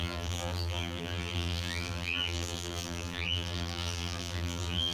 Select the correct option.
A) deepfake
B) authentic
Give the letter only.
A